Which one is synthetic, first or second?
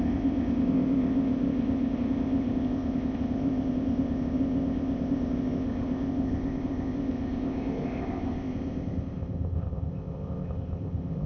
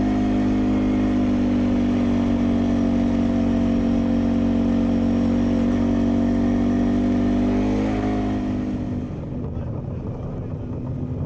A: first